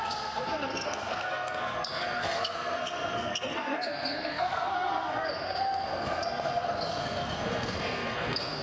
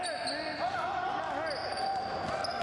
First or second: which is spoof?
first